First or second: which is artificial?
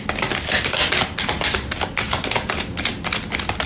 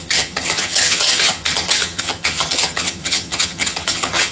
second